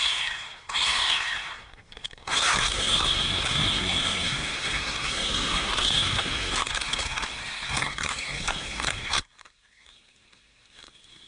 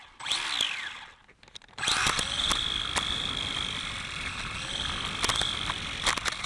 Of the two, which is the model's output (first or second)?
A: first